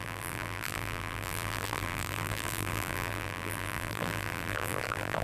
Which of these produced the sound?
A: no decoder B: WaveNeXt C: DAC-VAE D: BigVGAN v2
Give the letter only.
D